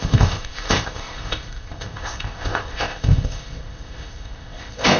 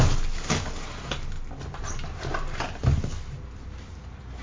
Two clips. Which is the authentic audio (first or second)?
second